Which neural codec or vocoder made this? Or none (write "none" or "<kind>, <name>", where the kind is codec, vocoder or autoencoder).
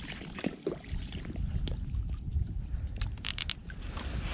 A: vocoder, BigVGAN v2